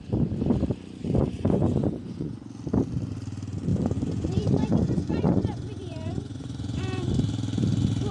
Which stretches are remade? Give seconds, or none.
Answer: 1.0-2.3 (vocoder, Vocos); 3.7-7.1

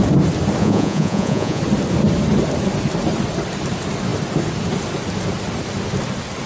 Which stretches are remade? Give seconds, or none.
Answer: 0.6-1.6 (vocoder, Vocos)

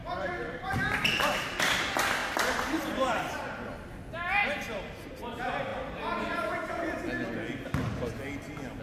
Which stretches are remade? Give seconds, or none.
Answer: 0.0-1.6 (vocoder, BigVGAN v2); 2.2-3.3; 4.4-5.3; 5.7-6.8

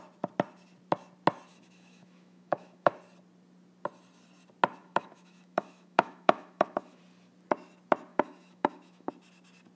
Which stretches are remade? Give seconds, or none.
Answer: 1.5-2.9 (autoencoder, DAC-VAE); 4.8-7.0; 8.1-9.1

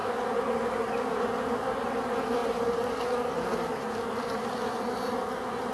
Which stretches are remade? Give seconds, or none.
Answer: none

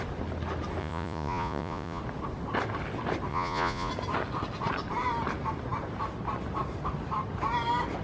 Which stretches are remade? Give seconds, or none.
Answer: 0.8-2.0 (vocoder, Vocos); 3.3-3.9

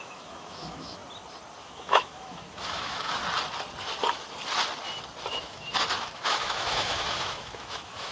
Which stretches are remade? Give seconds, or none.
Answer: 0.0-1.0 (autoencoder, DAC-VAE); 1.6-3.2; 5.3-8.1